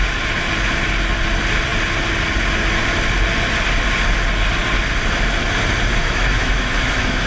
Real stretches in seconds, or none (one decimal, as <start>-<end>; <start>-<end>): 0.0-6.0